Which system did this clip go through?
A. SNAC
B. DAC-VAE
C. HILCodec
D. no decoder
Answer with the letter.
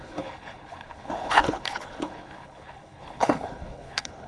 C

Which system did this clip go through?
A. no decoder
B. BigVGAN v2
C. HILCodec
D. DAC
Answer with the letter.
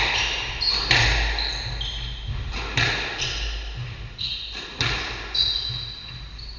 A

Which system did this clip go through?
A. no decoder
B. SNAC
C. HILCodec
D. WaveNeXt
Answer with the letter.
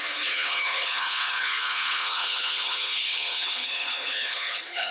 C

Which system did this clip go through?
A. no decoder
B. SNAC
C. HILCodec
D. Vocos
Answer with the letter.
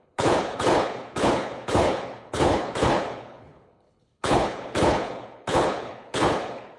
C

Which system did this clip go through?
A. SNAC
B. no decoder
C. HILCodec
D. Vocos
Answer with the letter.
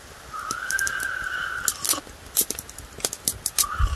B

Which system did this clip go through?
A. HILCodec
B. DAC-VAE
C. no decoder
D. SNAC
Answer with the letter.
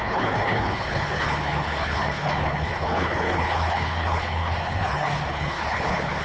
A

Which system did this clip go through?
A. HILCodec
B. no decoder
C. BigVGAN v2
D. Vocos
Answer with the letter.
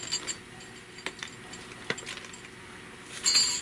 B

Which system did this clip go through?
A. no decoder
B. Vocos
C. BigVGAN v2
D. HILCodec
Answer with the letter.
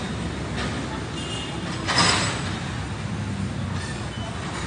A